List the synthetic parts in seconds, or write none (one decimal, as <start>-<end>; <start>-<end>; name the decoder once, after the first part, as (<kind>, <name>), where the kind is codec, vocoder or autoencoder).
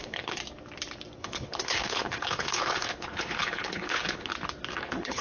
0.0-0.4 (codec, HILCodec); 1.2-4.3; 4.8-5.2